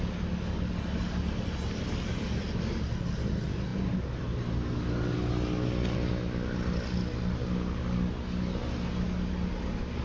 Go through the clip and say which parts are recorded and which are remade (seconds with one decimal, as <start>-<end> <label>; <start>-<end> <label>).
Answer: 0.0-10.0 recorded